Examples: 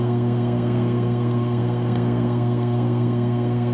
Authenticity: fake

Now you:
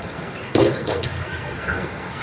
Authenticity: fake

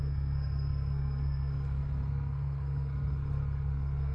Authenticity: fake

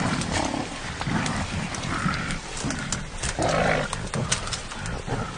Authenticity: real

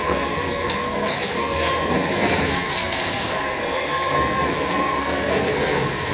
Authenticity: fake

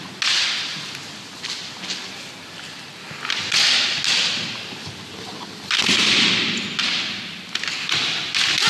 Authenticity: real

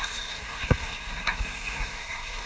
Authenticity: fake